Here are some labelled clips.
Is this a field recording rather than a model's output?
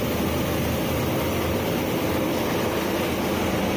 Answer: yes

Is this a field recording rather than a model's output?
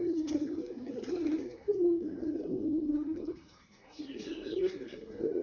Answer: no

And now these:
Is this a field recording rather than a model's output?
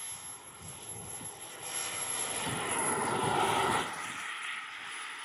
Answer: yes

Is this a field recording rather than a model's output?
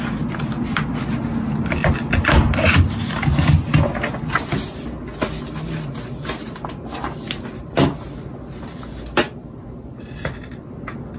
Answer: yes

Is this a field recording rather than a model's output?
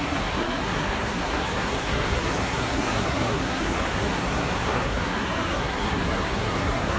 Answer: no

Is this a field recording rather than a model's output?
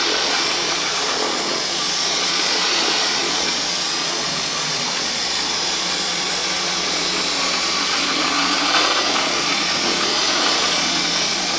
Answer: no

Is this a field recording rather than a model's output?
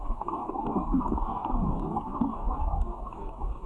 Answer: no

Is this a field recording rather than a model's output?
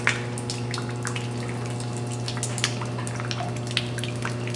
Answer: yes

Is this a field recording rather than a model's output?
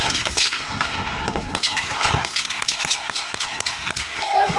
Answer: no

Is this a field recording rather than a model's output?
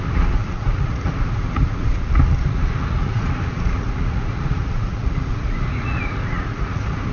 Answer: no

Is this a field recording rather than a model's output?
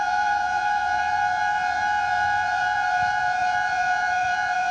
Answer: no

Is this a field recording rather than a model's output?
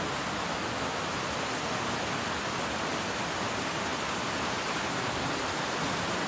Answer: yes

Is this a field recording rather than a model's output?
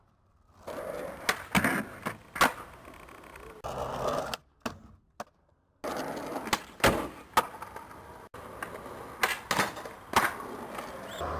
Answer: yes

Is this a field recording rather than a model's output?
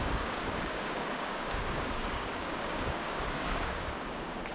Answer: no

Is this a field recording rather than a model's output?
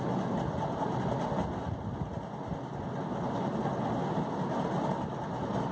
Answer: yes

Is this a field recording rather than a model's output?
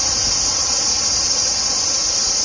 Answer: yes